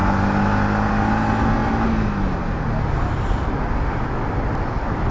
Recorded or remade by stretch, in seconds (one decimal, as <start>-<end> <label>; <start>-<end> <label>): 0.0-5.1 recorded